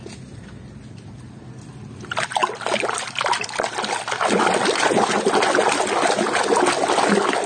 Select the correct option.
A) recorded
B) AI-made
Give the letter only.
A